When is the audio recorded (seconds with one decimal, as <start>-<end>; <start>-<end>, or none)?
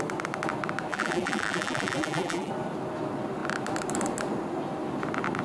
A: 0.0-0.9; 2.5-5.4